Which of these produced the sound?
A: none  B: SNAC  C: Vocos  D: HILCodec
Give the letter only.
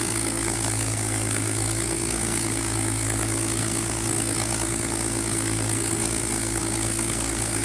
B